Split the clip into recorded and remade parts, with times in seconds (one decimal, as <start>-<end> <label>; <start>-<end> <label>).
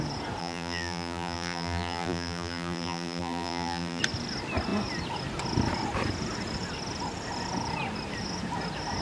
0.0-0.4 recorded; 0.4-4.0 remade; 4.0-9.0 recorded